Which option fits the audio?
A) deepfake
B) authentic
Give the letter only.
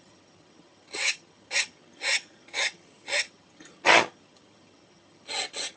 A